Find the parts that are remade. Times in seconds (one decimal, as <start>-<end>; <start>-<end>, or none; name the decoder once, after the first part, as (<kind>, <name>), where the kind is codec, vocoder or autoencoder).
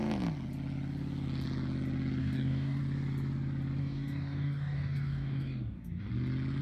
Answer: 2.2-2.8 (codec, DAC); 3.8-6.1